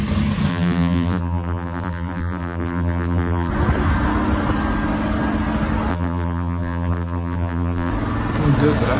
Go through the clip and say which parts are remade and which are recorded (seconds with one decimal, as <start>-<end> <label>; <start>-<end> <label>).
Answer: 0.0-0.5 recorded; 0.5-3.5 remade; 3.5-5.9 recorded; 5.9-7.9 remade; 7.9-9.0 recorded